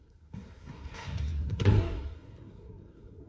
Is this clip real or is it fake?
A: fake